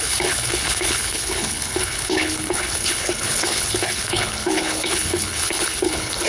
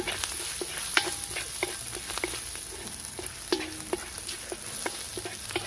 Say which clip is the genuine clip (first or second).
second